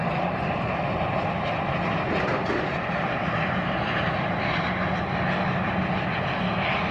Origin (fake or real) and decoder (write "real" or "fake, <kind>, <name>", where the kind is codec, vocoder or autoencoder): real